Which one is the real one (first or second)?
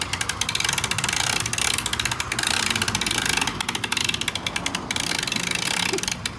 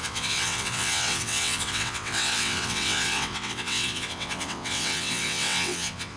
first